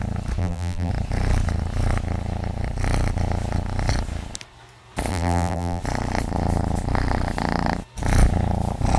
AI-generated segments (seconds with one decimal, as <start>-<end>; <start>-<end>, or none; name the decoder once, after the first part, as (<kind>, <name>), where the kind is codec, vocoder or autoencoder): 0.4-0.9 (vocoder, BigVGAN v2); 5.1-5.8